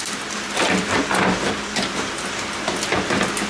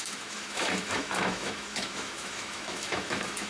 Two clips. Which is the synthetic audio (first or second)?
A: second